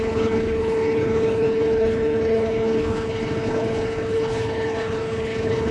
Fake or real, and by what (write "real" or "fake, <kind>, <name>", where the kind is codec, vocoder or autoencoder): fake, codec, HILCodec